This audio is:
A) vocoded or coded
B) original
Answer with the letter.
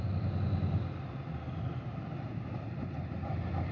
B